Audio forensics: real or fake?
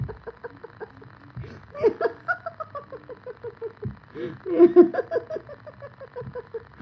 real